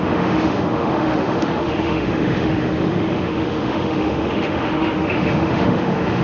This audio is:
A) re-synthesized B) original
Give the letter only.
A